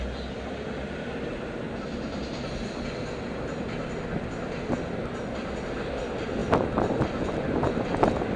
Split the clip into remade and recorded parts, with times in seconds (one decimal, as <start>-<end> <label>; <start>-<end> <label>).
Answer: 0.0-8.4 recorded